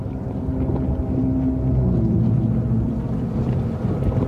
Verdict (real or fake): real